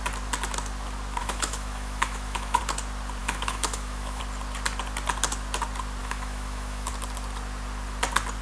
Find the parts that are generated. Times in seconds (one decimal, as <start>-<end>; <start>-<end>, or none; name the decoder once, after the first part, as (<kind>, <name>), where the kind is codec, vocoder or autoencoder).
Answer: 1.2-2.6 (autoencoder, DAC-VAE); 3.2-4.2; 6.0-6.9